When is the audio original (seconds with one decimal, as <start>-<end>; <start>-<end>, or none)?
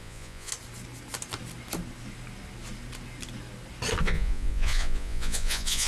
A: 0.5-4.0